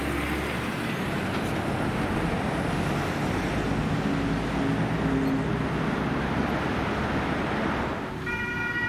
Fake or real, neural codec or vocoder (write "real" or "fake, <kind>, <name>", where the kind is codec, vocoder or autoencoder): real